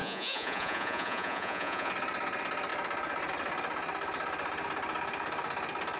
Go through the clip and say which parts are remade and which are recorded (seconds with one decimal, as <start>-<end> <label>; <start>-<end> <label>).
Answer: 0.0-1.9 remade; 1.9-6.0 recorded